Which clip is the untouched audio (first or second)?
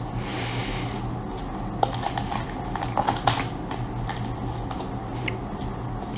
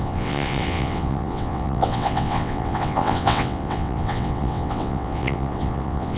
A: first